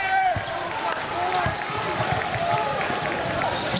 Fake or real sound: fake